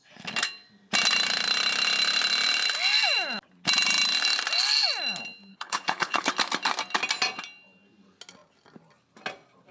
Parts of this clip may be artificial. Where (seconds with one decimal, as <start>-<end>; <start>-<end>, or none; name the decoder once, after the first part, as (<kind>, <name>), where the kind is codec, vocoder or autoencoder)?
5.5-6.3 (codec, HILCodec)